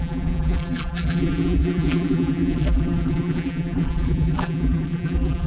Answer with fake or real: fake